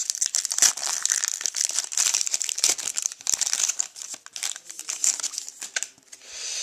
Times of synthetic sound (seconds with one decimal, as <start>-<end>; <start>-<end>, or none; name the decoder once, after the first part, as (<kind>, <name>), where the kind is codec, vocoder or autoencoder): none